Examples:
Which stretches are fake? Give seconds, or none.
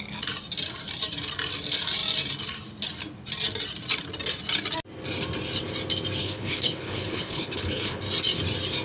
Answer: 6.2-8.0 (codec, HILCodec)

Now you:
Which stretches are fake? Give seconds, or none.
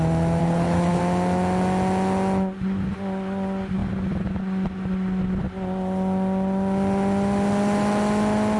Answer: 0.4-1.0 (codec, HILCodec)